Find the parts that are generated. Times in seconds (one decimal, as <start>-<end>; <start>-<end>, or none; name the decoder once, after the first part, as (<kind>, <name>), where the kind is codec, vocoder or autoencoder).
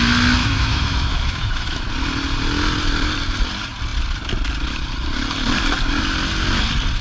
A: 0.4-1.9 (autoencoder, DAC-VAE)